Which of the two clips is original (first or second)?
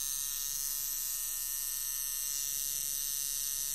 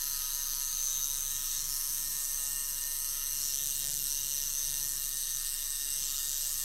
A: first